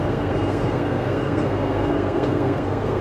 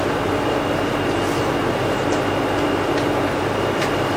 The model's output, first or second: first